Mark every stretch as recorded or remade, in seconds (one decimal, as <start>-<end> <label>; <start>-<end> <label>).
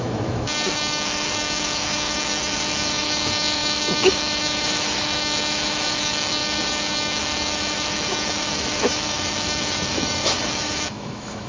0.0-11.5 remade